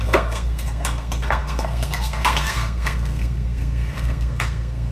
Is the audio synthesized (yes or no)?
yes